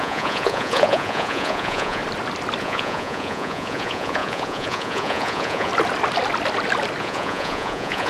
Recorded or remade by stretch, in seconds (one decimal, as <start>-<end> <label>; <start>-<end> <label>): 0.0-2.0 remade; 2.0-2.6 recorded; 2.6-5.7 remade; 5.7-7.0 recorded; 7.0-8.1 remade